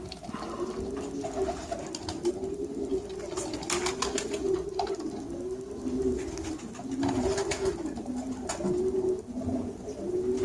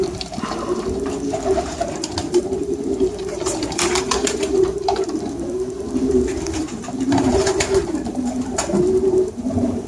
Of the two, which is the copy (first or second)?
second